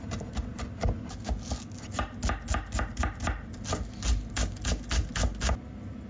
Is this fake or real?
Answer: real